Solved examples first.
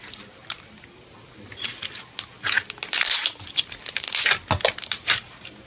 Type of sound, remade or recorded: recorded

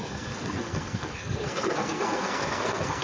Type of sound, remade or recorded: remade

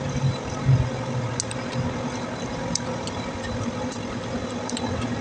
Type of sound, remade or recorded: recorded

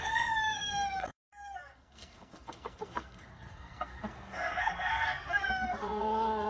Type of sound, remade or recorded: remade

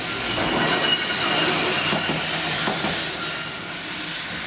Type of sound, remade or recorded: recorded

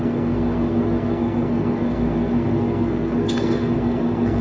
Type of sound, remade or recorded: remade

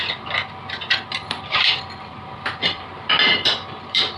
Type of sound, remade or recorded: remade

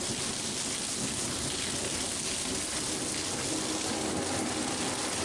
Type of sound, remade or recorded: recorded